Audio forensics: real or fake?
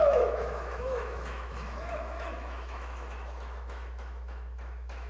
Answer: fake